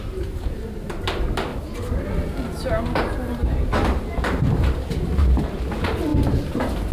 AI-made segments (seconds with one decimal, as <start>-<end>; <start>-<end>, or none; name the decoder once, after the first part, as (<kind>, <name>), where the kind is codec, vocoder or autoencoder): 0.0-1.5 (vocoder, BigVGAN v2); 3.0-6.9